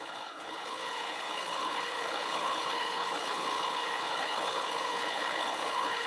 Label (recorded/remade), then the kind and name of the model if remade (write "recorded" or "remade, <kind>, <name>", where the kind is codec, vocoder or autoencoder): remade, codec, HILCodec